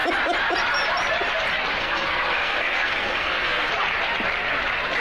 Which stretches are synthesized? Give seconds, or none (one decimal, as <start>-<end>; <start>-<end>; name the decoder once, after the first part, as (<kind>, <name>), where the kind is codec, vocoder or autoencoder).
1.8-3.7 (codec, SNAC)